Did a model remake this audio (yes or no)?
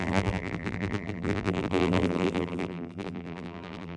yes